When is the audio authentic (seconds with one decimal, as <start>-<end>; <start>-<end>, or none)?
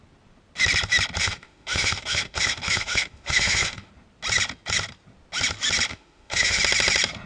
0.0-1.2; 3.9-5.9; 6.6-7.3